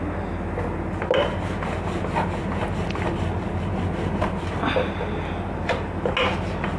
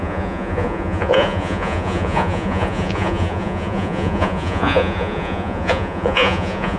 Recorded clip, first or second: first